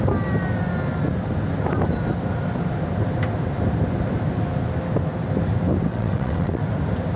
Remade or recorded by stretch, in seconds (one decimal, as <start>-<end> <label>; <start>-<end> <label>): 0.0-5.9 recorded; 5.9-6.6 remade; 6.6-7.2 recorded

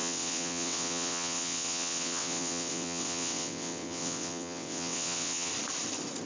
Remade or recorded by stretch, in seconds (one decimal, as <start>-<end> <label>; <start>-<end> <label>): 0.0-5.5 remade; 5.5-6.3 recorded

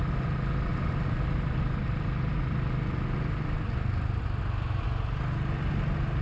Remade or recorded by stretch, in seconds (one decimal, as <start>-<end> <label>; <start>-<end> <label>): 0.0-6.2 recorded

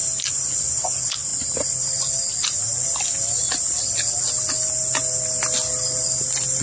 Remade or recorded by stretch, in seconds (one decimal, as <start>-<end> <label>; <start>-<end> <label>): 0.0-6.6 recorded

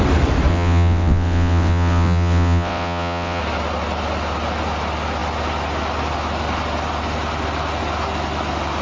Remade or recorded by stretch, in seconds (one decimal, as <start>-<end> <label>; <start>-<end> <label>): 0.0-0.5 recorded; 0.5-3.4 remade; 3.4-8.8 recorded